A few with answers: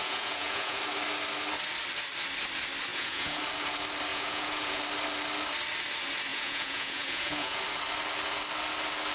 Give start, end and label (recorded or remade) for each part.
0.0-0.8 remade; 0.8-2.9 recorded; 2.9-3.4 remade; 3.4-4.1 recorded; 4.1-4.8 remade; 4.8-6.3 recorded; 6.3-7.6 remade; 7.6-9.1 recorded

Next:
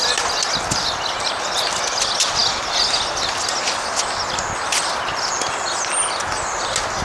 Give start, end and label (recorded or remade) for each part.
0.0-7.0 recorded

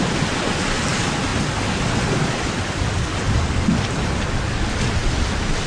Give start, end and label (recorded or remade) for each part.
0.0-5.7 recorded

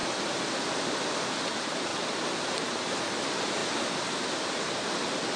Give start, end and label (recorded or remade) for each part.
0.0-1.2 remade; 1.2-1.9 recorded; 1.9-3.0 remade; 3.0-5.4 recorded

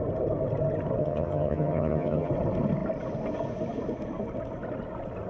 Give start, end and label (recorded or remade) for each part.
0.0-1.0 recorded; 1.0-2.3 remade; 2.3-5.3 recorded

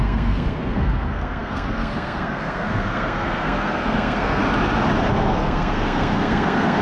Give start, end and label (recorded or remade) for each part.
0.0-4.4 remade; 4.4-5.1 recorded; 5.1-6.8 remade

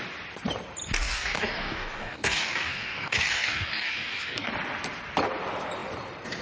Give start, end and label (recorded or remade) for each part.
0.0-1.0 recorded; 1.0-4.5 remade; 4.5-6.4 recorded

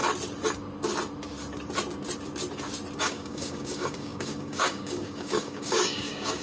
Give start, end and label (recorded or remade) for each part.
0.0-3.0 recorded; 3.0-6.4 remade